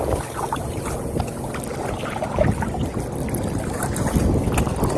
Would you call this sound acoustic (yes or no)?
yes